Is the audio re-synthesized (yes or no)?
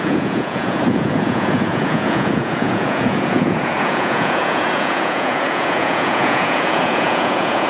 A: yes